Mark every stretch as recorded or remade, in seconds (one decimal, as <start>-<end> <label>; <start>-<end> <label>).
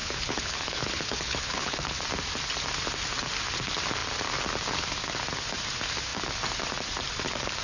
0.0-2.0 remade; 2.0-7.6 recorded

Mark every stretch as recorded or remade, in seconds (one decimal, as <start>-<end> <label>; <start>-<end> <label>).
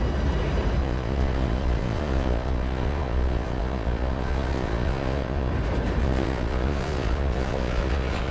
0.0-0.8 recorded; 0.8-5.5 remade; 5.5-6.0 recorded; 6.0-8.3 remade